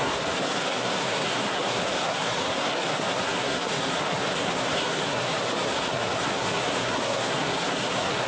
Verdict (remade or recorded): remade